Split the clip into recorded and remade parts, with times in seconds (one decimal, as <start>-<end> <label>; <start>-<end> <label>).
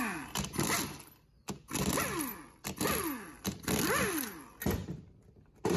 0.0-4.8 recorded; 4.8-5.8 remade